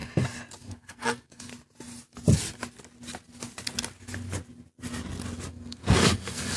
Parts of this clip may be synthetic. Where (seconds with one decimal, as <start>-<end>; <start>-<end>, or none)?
0.6-1.5; 5.5-6.6